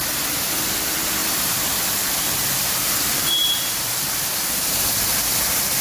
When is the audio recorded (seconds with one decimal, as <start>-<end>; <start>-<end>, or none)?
0.0-1.2; 4.7-5.8